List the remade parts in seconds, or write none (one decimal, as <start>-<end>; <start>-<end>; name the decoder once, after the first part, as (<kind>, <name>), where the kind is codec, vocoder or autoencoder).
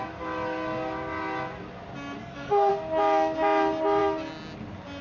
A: 2.2-2.7 (codec, SNAC)